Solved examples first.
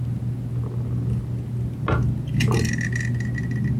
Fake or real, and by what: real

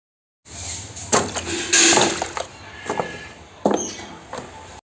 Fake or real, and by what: real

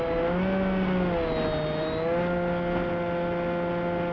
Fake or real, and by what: real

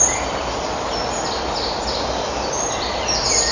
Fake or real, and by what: real